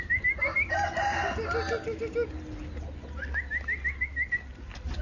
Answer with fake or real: real